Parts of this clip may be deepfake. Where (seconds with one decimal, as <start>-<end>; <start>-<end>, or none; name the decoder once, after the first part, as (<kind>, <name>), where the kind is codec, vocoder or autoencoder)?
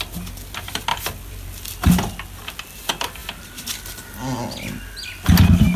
0.9-1.9 (vocoder, BigVGAN v2)